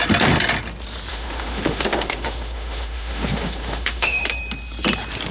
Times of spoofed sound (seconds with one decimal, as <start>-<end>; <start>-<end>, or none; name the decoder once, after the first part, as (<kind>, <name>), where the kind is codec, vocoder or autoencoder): 1.1-4.2 (autoencoder, DAC-VAE)